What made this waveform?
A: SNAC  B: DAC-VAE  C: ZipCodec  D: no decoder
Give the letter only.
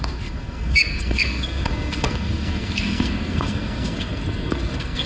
A